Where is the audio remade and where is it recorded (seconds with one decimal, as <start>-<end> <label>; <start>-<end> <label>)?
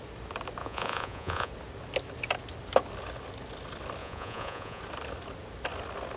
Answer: 0.0-0.6 recorded; 0.6-1.5 remade; 1.5-4.0 recorded; 4.0-4.8 remade; 4.8-6.2 recorded